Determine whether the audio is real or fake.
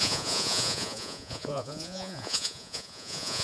fake